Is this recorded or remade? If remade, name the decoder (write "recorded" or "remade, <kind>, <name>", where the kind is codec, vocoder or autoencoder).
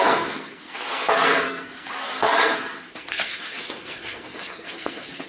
remade, codec, SNAC